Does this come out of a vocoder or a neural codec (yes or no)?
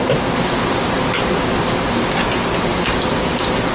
no